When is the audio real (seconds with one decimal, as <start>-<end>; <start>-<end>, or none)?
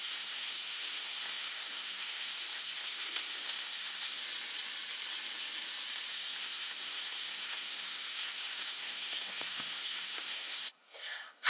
4.2-6.1